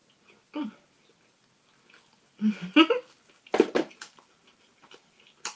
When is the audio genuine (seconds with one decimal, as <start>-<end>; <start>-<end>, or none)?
0.0-3.4